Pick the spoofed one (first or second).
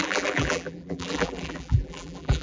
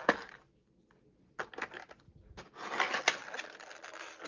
first